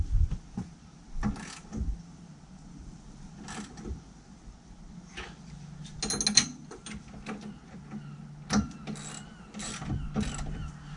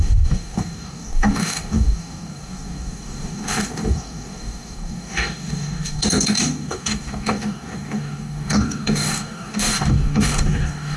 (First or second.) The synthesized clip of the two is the second